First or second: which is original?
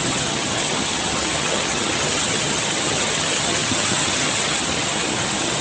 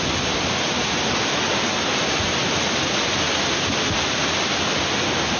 second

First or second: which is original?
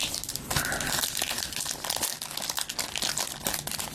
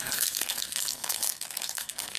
first